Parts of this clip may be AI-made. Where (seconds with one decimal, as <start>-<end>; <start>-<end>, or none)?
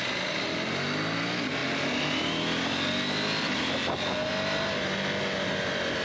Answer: none